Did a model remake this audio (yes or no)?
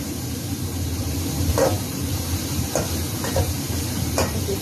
yes